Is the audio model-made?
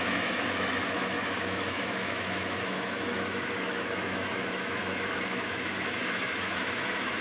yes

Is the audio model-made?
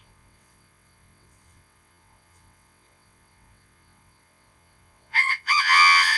yes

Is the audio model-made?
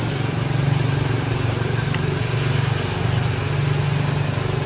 no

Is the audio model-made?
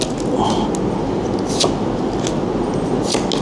no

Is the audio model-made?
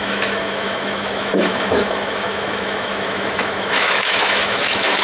yes